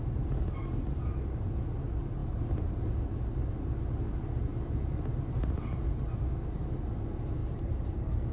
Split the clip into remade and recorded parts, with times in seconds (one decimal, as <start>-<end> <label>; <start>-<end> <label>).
0.0-2.2 recorded; 2.2-2.9 remade; 2.9-7.4 recorded; 7.4-8.3 remade